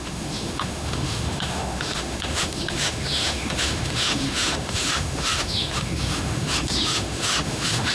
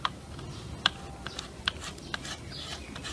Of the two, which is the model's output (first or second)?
first